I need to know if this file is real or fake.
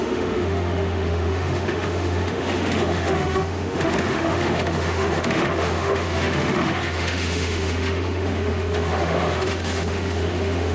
fake